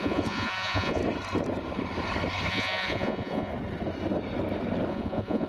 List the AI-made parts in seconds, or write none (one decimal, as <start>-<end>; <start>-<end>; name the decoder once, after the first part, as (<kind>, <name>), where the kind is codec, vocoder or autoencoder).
0.0-1.0 (vocoder, Vocos); 2.5-3.5; 4.9-5.5